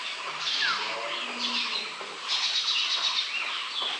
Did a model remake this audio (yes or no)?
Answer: no